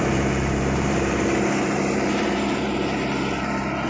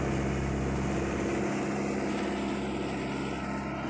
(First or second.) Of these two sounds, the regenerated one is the first